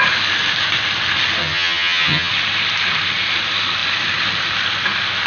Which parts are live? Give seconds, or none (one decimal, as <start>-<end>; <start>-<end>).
0.0-1.4; 2.3-5.3